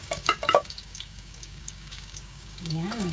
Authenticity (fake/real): fake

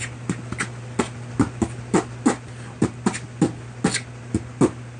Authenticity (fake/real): real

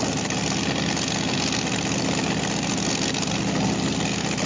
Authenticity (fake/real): real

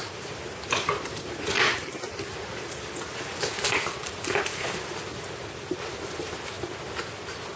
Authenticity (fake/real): real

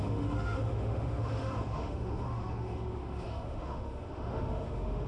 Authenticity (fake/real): fake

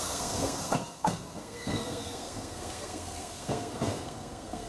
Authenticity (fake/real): fake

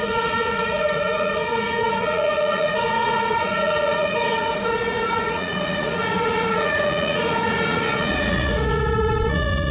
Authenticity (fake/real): fake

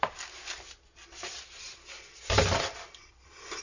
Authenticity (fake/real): real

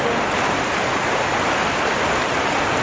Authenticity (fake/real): real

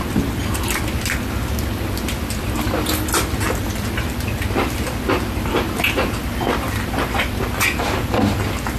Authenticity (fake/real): real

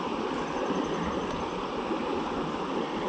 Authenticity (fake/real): real